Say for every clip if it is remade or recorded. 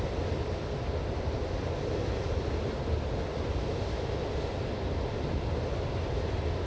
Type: recorded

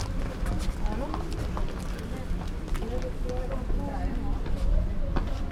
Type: recorded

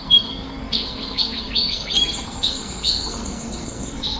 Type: remade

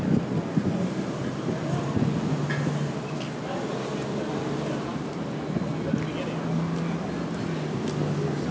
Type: recorded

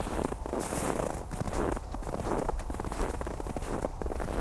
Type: recorded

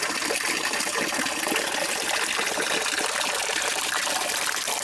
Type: recorded